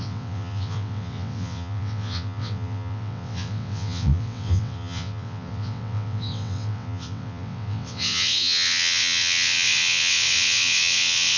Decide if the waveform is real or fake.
fake